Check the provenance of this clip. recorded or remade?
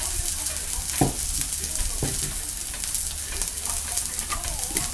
recorded